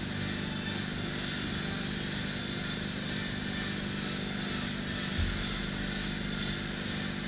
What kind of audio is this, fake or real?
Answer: real